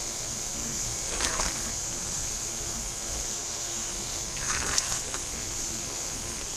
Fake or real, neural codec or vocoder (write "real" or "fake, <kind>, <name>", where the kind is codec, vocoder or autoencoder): fake, codec, SNAC